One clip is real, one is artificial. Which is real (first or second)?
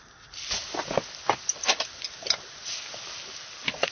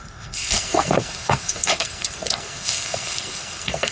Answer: first